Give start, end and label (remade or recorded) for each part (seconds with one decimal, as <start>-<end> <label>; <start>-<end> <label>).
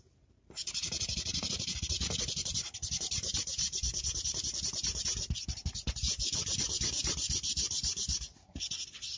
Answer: 0.0-0.8 recorded; 0.8-2.2 remade; 2.2-9.2 recorded